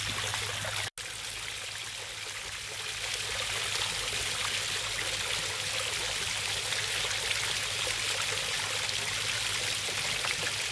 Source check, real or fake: real